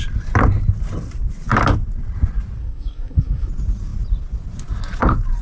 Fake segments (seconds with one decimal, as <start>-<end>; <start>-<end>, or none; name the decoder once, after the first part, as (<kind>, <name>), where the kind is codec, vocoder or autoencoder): 2.6-3.5 (codec, SNAC)